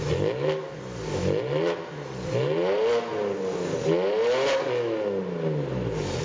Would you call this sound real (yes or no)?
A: yes